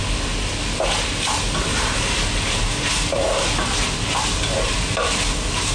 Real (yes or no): yes